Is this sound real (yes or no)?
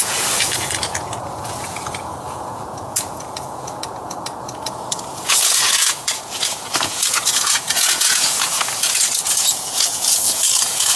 no